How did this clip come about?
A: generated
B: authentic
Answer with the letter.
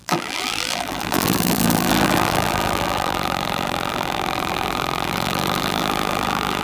A